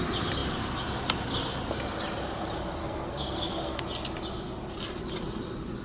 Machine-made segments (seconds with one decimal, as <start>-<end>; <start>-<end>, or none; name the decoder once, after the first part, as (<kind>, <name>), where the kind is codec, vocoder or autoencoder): 2.8-3.8 (codec, SNAC)